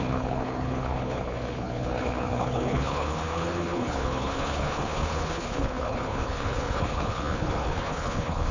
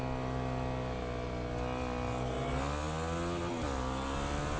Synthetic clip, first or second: first